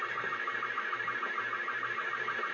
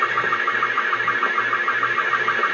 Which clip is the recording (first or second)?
second